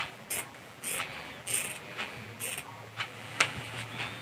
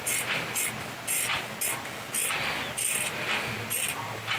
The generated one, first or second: first